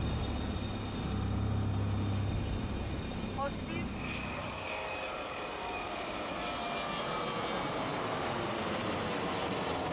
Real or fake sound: real